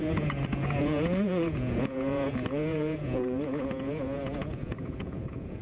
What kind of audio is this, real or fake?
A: fake